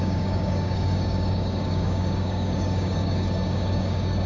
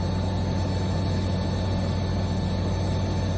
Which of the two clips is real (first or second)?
second